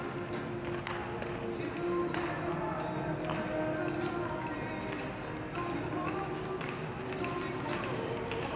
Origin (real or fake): real